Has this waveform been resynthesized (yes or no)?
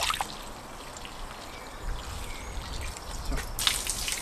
no